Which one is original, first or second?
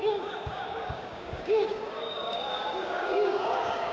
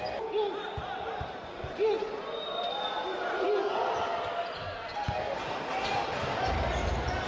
second